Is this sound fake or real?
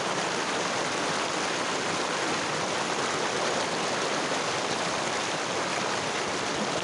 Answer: real